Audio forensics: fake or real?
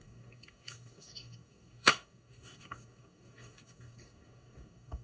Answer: fake